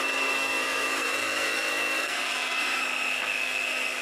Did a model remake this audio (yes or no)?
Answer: yes